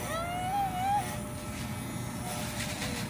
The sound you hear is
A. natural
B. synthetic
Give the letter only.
A